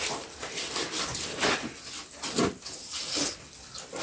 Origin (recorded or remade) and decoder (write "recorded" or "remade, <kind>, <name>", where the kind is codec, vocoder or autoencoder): recorded